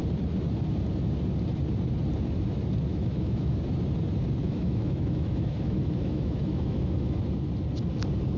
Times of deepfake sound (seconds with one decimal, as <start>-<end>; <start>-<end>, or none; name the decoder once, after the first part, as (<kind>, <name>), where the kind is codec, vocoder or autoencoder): 2.9-3.6 (autoencoder, DAC-VAE); 4.4-7.2